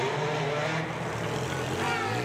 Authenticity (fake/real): real